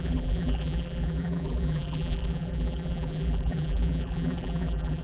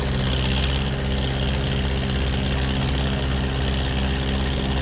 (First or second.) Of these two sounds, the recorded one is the second